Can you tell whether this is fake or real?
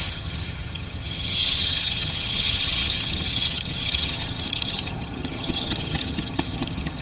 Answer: fake